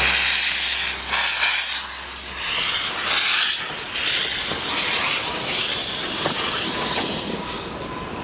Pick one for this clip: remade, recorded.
recorded